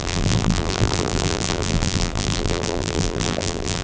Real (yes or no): no